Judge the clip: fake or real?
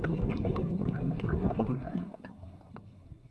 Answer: fake